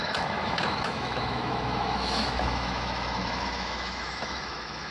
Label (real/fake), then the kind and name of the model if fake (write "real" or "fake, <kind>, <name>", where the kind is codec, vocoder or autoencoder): fake, autoencoder, DAC-VAE